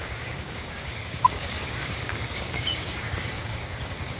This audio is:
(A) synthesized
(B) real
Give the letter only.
A